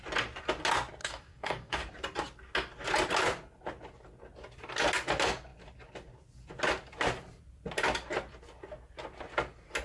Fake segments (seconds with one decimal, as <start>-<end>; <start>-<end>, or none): 1.0-1.8